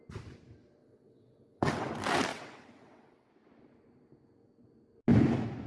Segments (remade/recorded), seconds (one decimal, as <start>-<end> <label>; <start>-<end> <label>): 0.0-0.8 recorded; 0.8-1.9 remade; 1.9-2.3 recorded; 2.3-3.3 remade; 3.3-5.7 recorded